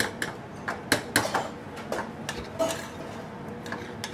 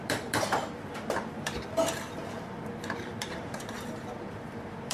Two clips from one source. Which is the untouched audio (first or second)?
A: first